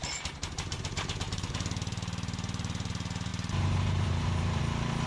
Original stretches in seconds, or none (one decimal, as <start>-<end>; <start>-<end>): 2.9-3.3; 4.6-5.1